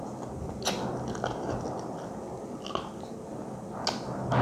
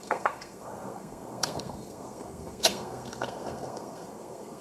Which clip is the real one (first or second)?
first